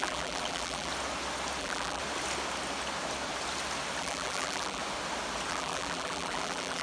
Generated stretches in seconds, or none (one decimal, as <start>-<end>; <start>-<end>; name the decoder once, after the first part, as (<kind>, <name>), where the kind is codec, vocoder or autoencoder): 0.0-0.9 (vocoder, BigVGAN v2); 1.6-2.0; 4.0-4.8; 5.5-6.8